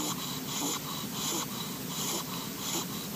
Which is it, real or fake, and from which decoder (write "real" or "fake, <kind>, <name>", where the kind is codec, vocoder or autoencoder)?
fake, vocoder, BigVGAN v2